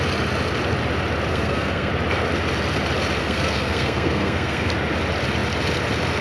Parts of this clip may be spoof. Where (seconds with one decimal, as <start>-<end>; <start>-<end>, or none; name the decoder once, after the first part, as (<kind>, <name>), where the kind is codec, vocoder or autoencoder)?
1.3-1.9 (codec, SNAC); 3.2-4.7